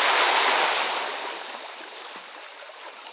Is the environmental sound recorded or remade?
recorded